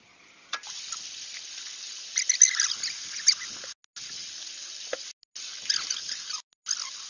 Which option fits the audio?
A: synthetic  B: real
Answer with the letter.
B